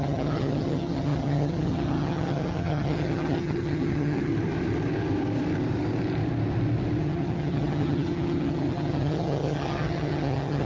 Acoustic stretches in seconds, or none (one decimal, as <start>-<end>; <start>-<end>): 4.3-7.0